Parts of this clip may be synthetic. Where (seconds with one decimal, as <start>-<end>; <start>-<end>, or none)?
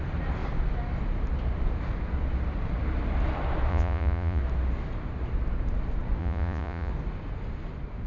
3.7-4.4; 6.2-6.9